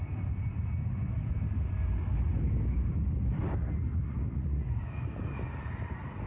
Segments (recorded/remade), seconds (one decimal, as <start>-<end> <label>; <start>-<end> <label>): 0.0-3.9 recorded; 3.9-4.8 remade; 4.8-6.3 recorded